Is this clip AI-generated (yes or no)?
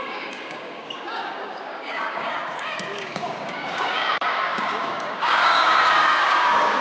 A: yes